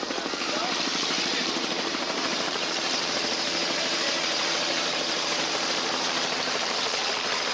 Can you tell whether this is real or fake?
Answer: fake